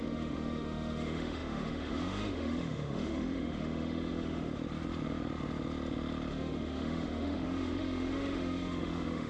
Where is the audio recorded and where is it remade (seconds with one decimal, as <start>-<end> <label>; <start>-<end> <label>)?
0.0-4.6 remade; 4.6-6.3 recorded; 6.3-9.3 remade